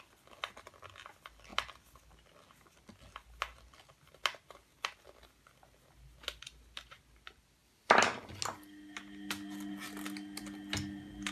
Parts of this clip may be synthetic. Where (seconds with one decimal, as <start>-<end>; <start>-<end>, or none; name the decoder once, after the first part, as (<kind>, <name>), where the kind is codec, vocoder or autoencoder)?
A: none